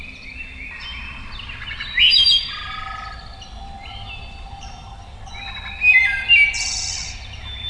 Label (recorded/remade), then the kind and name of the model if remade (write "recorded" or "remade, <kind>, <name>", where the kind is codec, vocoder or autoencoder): recorded